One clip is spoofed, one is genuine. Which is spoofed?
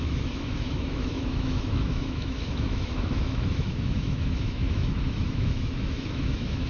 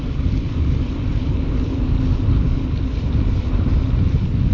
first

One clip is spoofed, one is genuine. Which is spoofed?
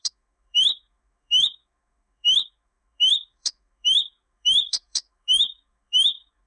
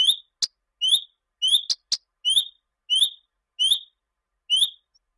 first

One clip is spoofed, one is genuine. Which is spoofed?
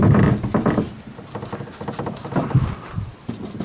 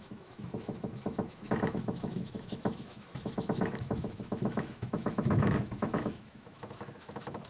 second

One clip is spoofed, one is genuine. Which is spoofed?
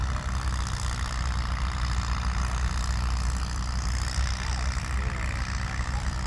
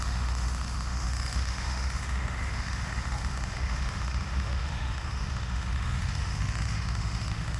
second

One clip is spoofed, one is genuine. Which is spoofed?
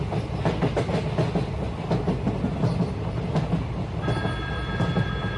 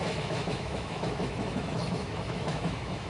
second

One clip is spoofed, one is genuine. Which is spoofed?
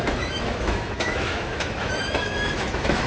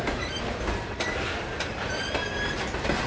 first